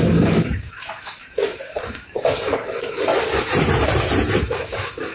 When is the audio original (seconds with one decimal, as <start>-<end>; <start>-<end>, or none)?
3.5-4.4